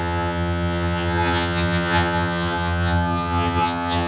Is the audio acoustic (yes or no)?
no